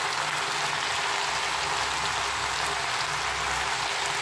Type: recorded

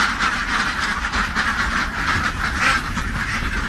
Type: remade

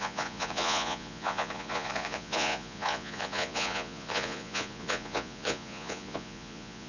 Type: remade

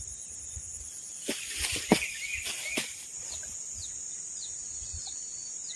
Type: recorded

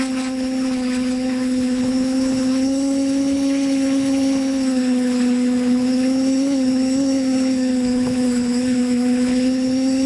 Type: remade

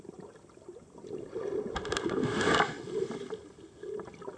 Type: recorded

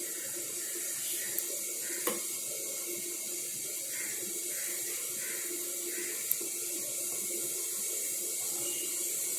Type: recorded